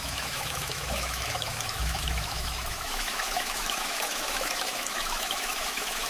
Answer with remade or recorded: remade